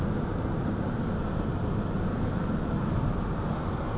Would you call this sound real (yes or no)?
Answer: yes